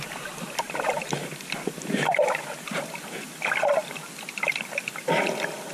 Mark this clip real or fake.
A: real